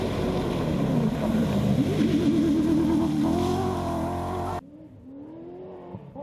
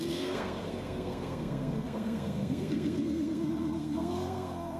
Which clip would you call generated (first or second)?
second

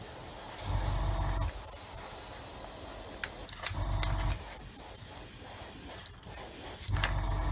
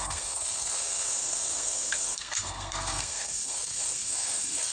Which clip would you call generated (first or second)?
second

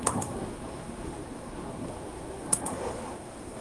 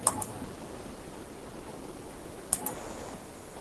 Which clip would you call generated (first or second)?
first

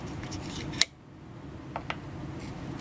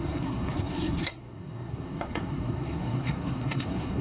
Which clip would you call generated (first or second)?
second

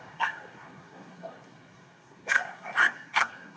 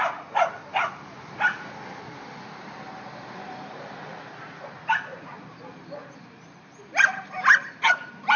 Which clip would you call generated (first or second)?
first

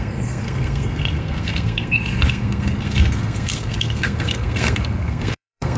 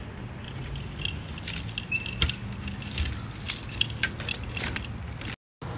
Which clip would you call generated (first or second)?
first